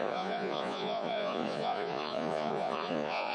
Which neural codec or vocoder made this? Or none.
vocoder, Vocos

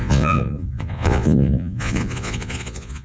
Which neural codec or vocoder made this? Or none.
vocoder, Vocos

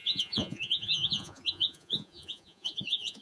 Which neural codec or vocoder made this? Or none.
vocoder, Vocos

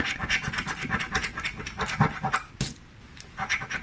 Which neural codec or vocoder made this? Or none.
none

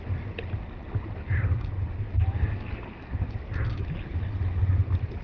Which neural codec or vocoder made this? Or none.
none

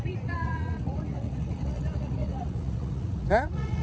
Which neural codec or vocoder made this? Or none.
vocoder, Vocos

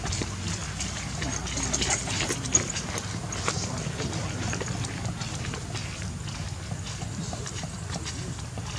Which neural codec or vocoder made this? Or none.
none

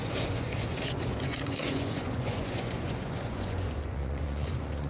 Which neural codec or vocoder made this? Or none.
vocoder, Vocos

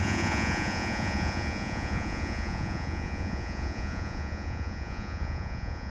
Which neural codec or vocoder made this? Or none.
vocoder, Vocos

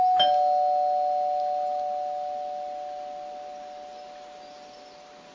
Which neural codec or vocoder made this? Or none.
none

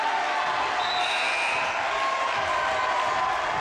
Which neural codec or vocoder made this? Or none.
none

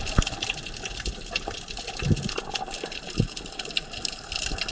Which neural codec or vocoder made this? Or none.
none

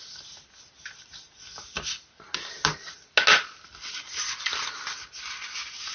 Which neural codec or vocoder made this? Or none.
none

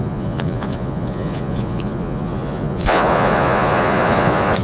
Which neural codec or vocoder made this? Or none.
vocoder, Vocos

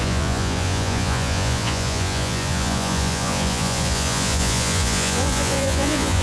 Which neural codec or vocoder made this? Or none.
vocoder, Vocos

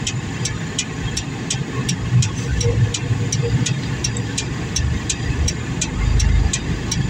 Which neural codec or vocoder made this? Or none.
none